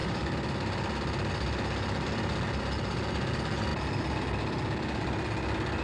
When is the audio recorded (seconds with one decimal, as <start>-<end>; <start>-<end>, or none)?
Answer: 0.0-5.8